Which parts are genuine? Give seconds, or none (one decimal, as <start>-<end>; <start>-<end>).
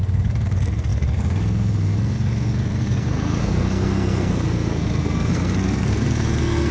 none